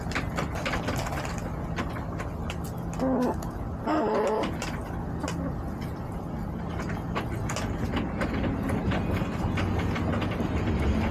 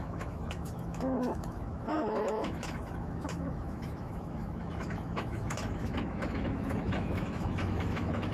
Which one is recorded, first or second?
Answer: first